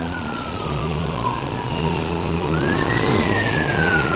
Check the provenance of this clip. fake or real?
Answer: fake